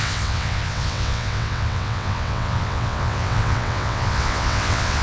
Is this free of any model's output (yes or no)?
no